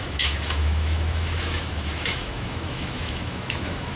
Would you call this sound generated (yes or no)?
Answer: yes